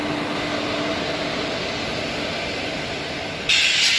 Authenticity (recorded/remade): recorded